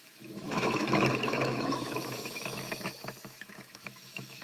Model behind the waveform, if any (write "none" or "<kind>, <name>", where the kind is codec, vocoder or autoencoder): autoencoder, DAC-VAE